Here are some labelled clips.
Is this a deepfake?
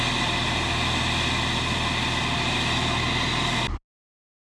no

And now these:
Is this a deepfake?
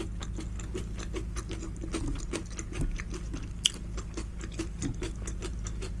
no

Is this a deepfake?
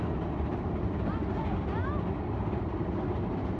no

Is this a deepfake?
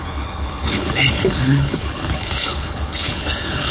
yes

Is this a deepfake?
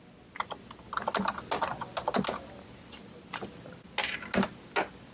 no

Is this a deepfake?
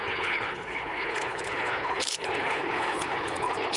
yes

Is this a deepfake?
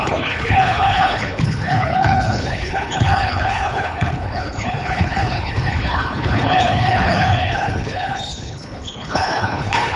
yes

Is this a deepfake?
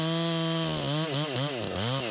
no